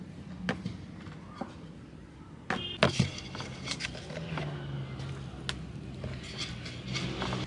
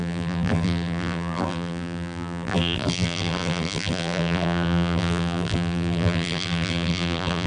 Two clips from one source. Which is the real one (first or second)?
first